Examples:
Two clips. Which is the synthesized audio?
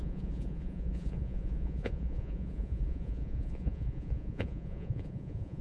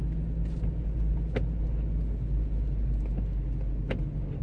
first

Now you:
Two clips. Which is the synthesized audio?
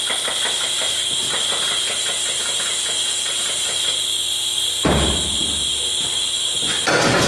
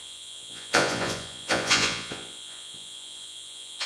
second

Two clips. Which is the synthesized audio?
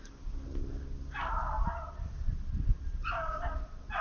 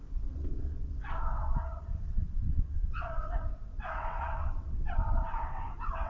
second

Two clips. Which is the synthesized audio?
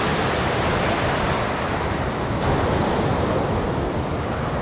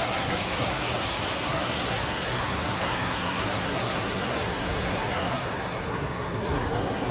second